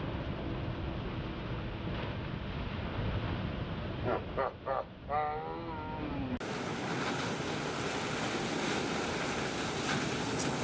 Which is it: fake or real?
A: real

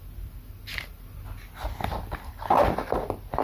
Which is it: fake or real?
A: real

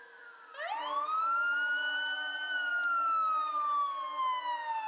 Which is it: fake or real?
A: real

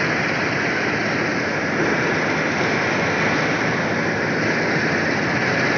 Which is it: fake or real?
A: real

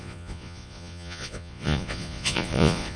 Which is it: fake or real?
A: fake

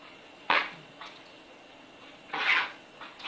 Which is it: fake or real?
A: fake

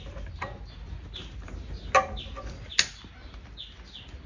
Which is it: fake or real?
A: real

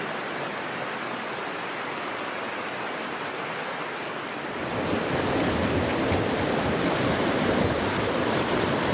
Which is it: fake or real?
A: real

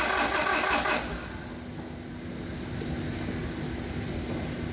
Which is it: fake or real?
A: real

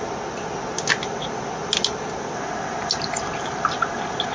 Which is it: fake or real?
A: real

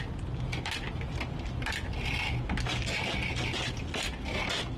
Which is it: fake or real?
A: real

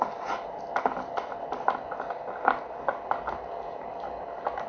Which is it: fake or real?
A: real